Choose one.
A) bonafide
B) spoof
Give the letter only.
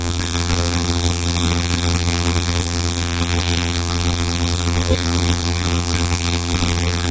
B